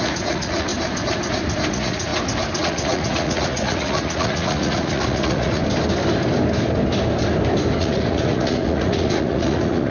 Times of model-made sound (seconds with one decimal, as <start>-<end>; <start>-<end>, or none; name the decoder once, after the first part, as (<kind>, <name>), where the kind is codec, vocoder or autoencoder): 0.0-0.7 (vocoder, Vocos); 1.7-2.1; 2.6-5.6; 7.8-9.9

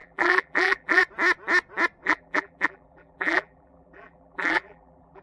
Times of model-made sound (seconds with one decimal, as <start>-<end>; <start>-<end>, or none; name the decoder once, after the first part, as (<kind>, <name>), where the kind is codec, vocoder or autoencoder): 0.0-1.0 (vocoder, BigVGAN v2); 2.0-5.2

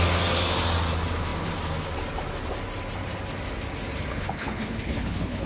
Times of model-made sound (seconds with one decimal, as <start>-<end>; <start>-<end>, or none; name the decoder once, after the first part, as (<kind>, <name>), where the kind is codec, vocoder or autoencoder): 4.1-5.5 (codec, HILCodec)

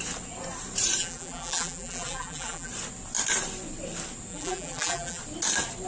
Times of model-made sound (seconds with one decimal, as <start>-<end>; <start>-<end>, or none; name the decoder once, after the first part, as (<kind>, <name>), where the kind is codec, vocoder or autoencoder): 1.0-2.7 (vocoder, BigVGAN v2); 4.3-5.2

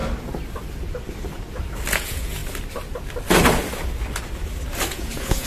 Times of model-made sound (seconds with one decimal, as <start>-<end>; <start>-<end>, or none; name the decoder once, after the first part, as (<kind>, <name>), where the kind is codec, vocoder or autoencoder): 1.9-2.4 (vocoder, Vocos); 4.9-5.5

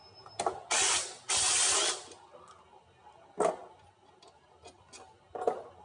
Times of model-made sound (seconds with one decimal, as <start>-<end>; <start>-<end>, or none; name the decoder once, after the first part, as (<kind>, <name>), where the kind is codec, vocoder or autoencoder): none

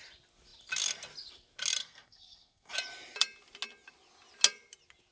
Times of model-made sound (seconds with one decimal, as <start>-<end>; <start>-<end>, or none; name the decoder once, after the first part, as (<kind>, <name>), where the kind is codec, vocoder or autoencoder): 1.8-2.7 (codec, SNAC)